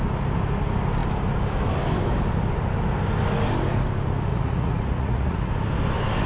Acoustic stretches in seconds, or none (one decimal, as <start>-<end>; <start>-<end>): 0.0-4.3; 5.5-6.3